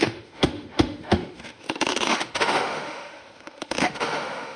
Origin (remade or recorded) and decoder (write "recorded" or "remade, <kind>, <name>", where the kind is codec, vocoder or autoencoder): remade, autoencoder, DAC-VAE